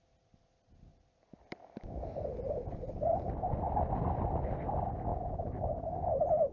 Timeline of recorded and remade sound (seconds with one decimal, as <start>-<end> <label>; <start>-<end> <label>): 0.0-0.9 recorded; 0.9-2.9 remade; 2.9-6.5 recorded